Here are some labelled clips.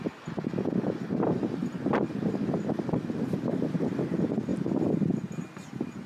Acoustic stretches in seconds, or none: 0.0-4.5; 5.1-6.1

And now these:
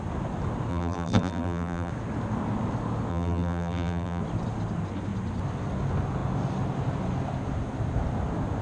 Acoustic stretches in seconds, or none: 0.0-0.7; 1.9-3.1; 4.2-8.6

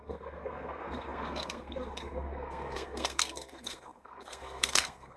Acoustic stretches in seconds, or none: none

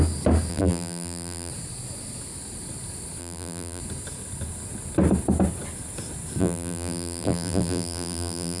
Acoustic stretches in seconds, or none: 0.0-0.5; 1.5-3.2; 3.8-6.4

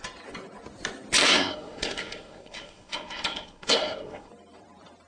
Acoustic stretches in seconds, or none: 0.0-1.2; 4.3-5.1

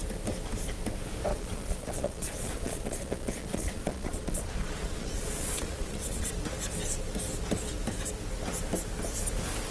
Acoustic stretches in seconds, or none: 0.0-1.3; 6.3-9.7

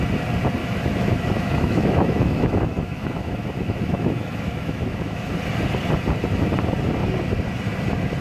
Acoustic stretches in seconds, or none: 0.0-0.6; 5.3-8.2

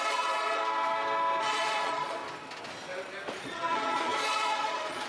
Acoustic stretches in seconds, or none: 0.6-1.4; 2.2-3.4